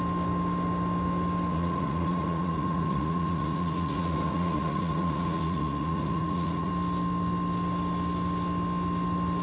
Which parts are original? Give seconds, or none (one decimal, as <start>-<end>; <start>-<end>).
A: 0.0-1.5; 6.7-9.4